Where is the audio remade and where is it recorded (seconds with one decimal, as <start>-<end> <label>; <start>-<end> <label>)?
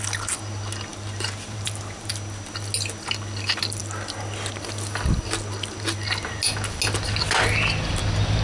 0.0-0.9 recorded; 0.9-2.1 remade; 2.1-8.4 recorded